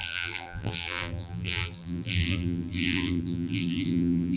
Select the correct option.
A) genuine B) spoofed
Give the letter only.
B